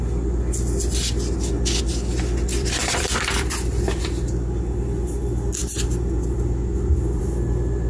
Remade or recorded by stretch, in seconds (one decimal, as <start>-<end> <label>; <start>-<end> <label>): 0.0-2.5 recorded; 2.5-3.6 remade; 3.6-7.9 recorded